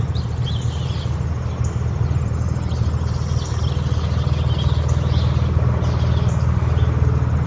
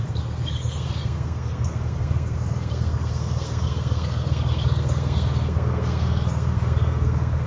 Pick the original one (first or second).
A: first